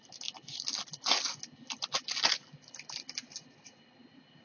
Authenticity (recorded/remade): recorded